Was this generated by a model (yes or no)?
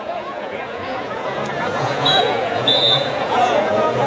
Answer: yes